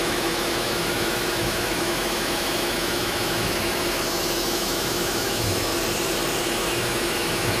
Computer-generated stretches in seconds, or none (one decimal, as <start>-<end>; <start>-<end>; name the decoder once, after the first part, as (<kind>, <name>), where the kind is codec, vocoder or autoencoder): 0.0-5.7 (autoencoder, DAC-VAE); 6.4-7.6

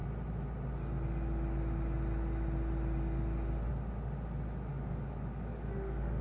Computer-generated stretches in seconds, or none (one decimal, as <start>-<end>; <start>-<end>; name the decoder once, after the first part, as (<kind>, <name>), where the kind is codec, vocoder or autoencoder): 4.7-6.2 (codec, DAC)